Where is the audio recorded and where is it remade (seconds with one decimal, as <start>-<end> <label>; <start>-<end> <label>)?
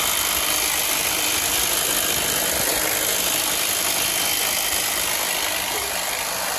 0.0-6.6 recorded